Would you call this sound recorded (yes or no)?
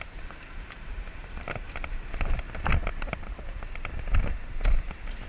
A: no